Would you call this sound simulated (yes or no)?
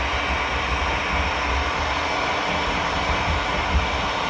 no